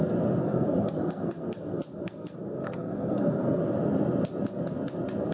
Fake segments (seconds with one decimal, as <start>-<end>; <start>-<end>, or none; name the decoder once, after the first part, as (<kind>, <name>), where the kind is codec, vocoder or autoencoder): 0.4-3.6 (codec, SNAC)